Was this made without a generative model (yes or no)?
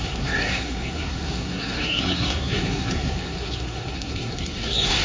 no